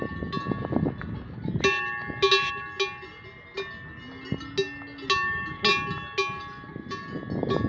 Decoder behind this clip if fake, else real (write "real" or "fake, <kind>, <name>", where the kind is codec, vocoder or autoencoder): real